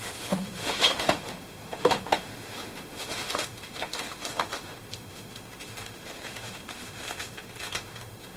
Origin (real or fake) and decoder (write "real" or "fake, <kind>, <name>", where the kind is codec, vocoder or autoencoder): fake, autoencoder, DAC-VAE